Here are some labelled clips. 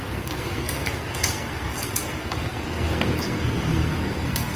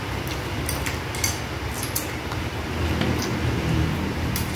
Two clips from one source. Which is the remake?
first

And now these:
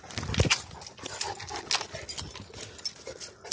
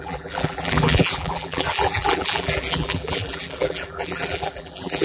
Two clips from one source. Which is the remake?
second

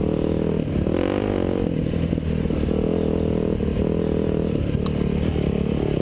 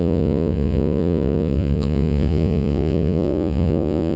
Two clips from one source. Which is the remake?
second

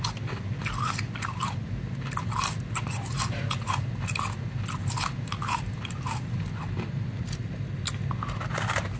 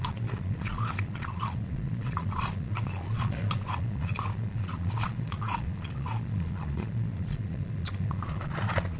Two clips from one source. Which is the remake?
second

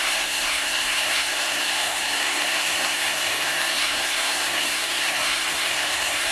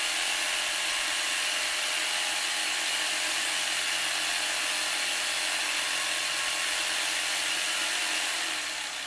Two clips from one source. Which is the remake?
first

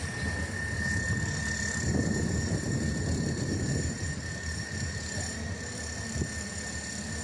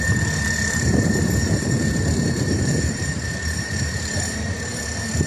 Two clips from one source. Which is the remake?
second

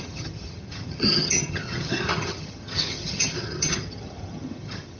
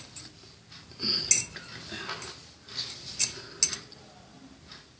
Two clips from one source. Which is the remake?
first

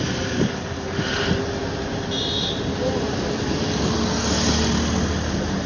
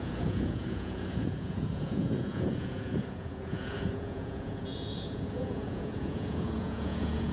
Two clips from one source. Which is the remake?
second